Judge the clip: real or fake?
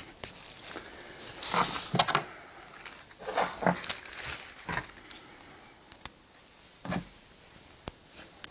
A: real